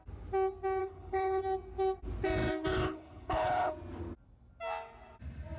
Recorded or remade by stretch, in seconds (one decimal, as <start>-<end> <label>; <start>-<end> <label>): 0.0-0.8 recorded; 0.8-1.4 remade; 1.4-2.7 recorded; 2.7-3.7 remade; 3.7-5.6 recorded